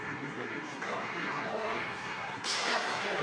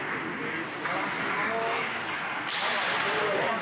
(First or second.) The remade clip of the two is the first